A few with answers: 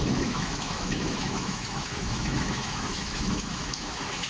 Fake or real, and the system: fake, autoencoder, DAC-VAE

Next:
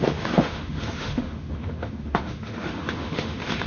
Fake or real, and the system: fake, autoencoder, DAC-VAE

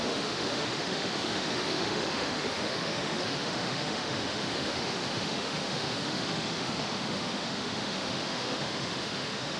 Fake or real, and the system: fake, autoencoder, DAC-VAE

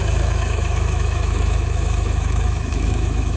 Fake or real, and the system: fake, autoencoder, DAC-VAE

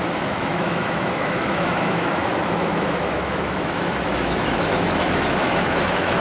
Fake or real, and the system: fake, autoencoder, DAC-VAE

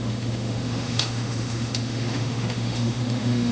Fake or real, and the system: fake, autoencoder, DAC-VAE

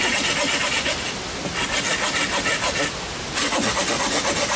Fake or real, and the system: real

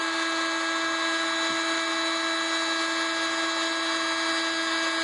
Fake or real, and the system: real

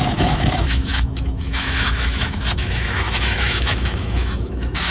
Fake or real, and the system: fake, autoencoder, DAC-VAE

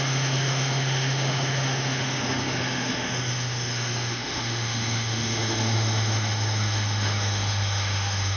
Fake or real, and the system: fake, autoencoder, DAC-VAE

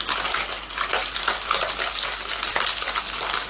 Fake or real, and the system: real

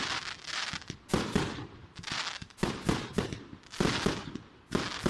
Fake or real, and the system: real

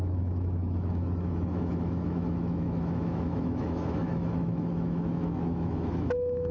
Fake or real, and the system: fake, autoencoder, DAC-VAE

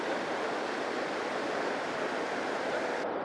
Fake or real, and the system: real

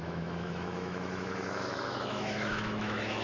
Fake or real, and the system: fake, autoencoder, DAC-VAE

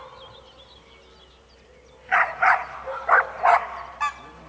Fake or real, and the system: real